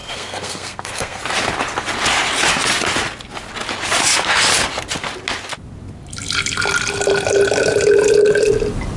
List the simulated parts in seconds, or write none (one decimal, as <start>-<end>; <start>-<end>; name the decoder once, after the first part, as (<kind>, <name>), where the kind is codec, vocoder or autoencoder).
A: 0.0-1.2 (codec, SNAC)